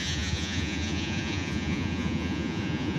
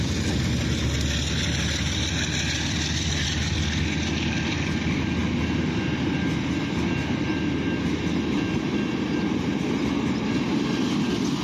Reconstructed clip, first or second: first